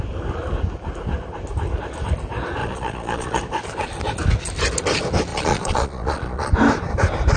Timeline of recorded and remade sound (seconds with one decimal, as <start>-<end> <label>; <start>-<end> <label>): 0.0-2.6 recorded; 2.6-3.4 remade; 3.4-5.3 recorded; 5.3-6.5 remade; 6.5-7.4 recorded